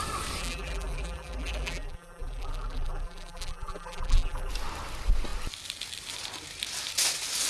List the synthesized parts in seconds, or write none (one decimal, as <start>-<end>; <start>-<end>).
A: 0.4-4.5